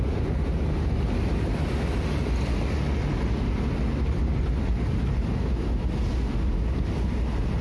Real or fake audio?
real